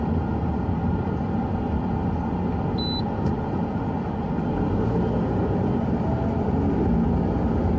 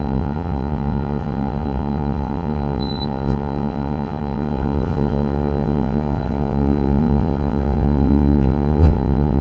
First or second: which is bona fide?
first